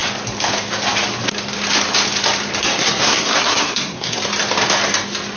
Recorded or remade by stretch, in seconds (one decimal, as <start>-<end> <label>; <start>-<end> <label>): 0.0-2.6 recorded; 2.6-4.2 remade; 4.2-5.4 recorded